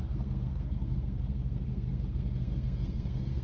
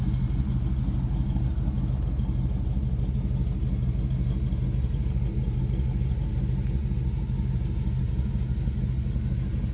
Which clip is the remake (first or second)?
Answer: first